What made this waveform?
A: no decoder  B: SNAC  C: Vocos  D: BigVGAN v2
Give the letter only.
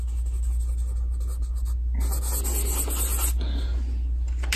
A